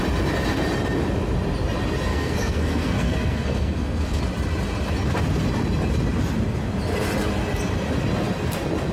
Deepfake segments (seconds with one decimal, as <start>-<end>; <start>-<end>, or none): 2.1-4.2